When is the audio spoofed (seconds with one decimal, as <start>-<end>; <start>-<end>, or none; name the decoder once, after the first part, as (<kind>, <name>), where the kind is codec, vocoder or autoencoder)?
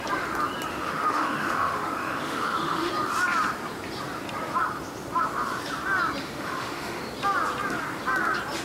0.7-2.9 (autoencoder, DAC-VAE); 6.2-7.0